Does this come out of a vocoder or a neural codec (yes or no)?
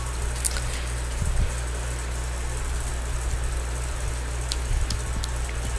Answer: no